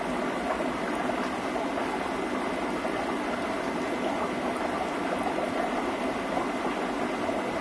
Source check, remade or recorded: recorded